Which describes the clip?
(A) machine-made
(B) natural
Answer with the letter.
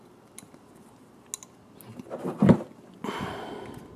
B